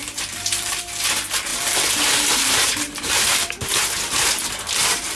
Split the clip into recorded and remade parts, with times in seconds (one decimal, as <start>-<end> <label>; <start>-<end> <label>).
0.0-0.9 remade; 0.9-1.5 recorded; 1.5-3.8 remade; 3.8-5.1 recorded